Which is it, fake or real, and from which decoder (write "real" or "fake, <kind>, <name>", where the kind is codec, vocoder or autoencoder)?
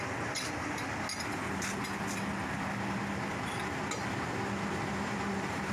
real